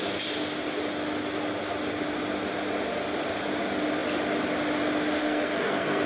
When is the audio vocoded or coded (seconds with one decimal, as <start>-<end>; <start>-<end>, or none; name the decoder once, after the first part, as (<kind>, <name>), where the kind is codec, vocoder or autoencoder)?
5.2-6.1 (codec, SNAC)